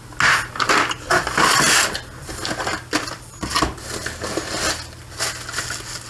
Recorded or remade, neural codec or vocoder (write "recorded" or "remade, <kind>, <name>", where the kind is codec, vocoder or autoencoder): recorded